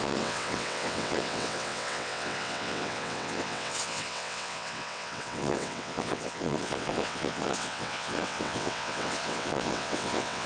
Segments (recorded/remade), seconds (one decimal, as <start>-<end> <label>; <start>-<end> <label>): 0.0-10.5 remade